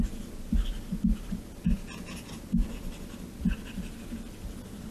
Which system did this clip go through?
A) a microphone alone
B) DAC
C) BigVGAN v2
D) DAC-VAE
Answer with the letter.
A